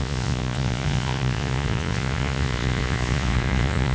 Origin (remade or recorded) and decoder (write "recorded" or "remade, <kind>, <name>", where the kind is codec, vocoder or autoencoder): remade, vocoder, Vocos